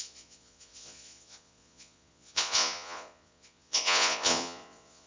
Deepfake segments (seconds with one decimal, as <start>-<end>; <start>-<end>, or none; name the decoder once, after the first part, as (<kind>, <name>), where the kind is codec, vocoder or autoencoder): 0.0-5.1 (vocoder, Vocos)